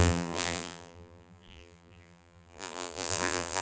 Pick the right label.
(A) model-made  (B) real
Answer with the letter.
A